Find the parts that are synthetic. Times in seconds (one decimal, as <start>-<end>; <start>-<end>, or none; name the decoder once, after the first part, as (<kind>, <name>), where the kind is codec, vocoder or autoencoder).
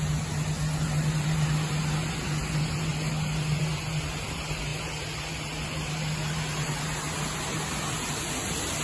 none